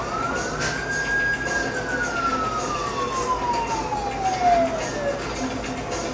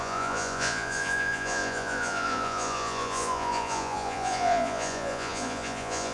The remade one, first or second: second